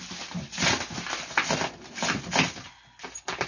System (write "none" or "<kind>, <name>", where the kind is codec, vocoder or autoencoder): none